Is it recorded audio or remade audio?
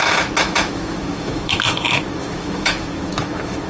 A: remade